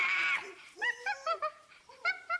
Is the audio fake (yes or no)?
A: yes